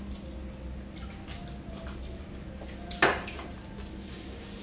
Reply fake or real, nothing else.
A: real